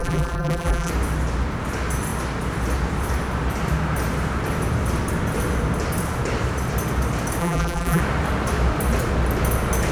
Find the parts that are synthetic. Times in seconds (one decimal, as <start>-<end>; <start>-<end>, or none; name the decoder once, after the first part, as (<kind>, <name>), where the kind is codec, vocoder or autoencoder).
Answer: 0.0-0.9 (vocoder, BigVGAN v2); 7.4-8.0